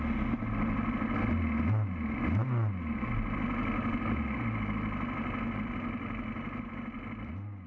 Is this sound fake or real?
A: real